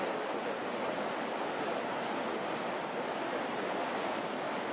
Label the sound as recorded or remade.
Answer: recorded